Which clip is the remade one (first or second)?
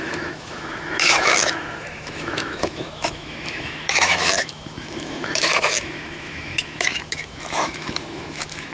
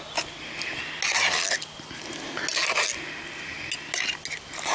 first